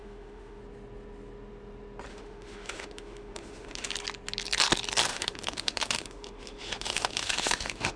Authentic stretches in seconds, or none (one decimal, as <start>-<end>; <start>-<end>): 0.6-2.1; 3.9-5.1